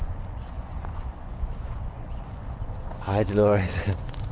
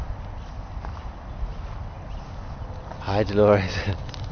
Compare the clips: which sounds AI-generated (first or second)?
first